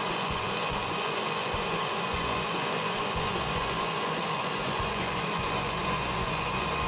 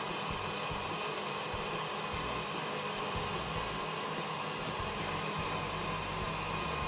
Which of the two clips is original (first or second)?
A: second